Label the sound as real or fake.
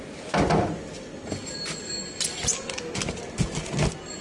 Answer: real